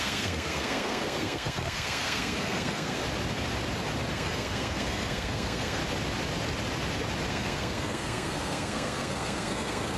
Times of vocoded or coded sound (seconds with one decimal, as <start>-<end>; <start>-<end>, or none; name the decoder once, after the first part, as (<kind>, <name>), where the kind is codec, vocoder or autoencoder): 0.0-3.0 (codec, SNAC); 4.1-5.8; 7.3-10.0